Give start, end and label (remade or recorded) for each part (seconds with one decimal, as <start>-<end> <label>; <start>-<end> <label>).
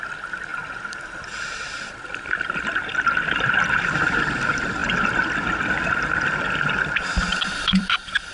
0.0-0.5 remade; 0.5-1.1 recorded; 1.1-4.8 remade; 4.8-7.5 recorded; 7.5-8.3 remade